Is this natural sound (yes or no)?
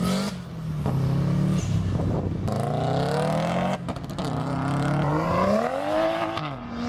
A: yes